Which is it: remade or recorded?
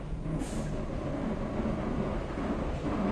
recorded